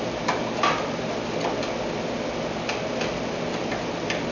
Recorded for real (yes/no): yes